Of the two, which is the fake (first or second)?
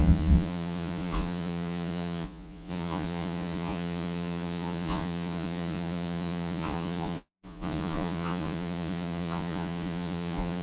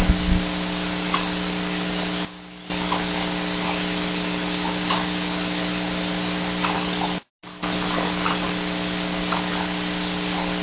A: first